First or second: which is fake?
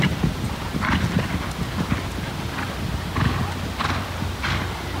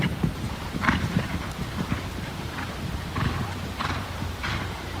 second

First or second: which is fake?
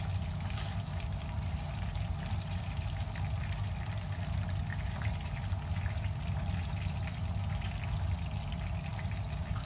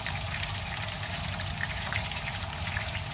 second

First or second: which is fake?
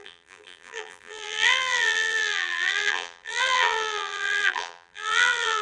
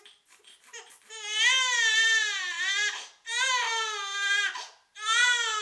first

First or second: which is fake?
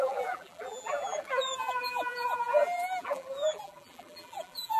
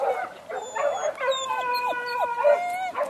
first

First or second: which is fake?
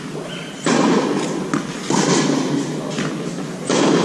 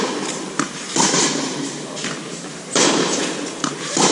second